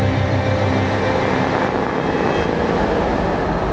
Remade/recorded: recorded